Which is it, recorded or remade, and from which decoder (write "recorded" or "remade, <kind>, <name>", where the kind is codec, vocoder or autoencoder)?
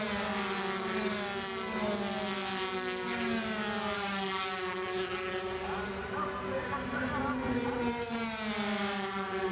recorded